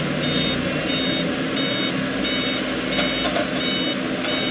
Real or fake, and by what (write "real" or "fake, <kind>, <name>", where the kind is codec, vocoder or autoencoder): real